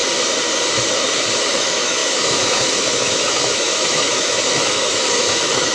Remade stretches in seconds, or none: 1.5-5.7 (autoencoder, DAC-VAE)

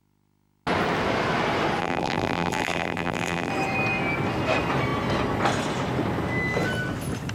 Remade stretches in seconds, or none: 1.8-3.5 (vocoder, BigVGAN v2)

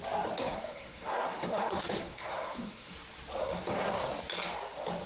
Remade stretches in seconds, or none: 0.4-2.9 (codec, SNAC); 3.4-4.1

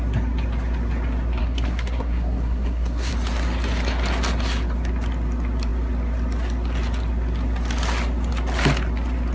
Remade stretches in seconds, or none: 1.4-3.1 (codec, SNAC)

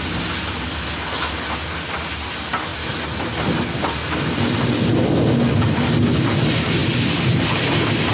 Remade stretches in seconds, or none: none

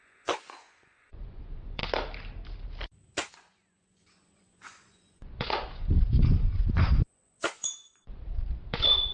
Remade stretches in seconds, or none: 0.0-1.8 (vocoder, Vocos); 3.3-8.2; 8.7-9.1

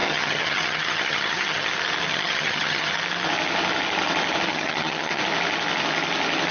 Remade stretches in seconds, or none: 0.0-1.7 (vocoder, HiFi-GAN); 2.1-2.9; 4.5-5.2